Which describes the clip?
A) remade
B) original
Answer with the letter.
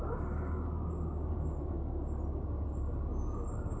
B